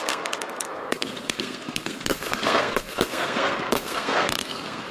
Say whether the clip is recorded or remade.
remade